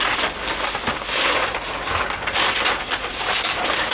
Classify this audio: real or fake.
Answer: real